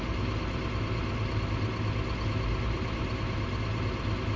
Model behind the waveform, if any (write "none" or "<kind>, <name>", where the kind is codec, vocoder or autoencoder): none